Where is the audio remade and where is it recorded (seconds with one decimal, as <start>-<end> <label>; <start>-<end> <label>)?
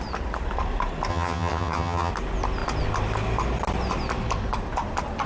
0.0-1.1 recorded; 1.1-2.1 remade; 2.1-5.3 recorded